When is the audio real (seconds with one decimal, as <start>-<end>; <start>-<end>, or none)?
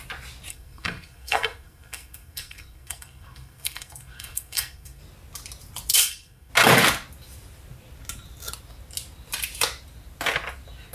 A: 0.0-0.5; 5.0-6.0; 6.5-10.9